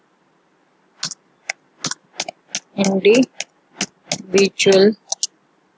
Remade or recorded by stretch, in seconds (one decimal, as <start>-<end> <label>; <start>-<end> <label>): 0.0-5.8 recorded